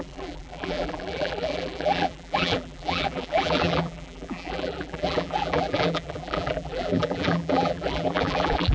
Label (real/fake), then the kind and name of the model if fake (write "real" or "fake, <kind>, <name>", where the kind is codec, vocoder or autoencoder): fake, vocoder, BigVGAN v2